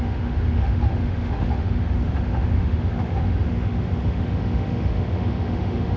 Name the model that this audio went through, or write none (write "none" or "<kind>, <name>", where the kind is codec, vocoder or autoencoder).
autoencoder, DAC-VAE